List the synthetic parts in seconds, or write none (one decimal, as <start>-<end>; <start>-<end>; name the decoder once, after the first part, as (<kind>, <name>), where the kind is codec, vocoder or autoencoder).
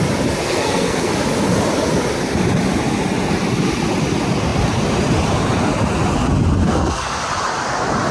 0.4-1.1 (codec, SNAC); 6.6-7.2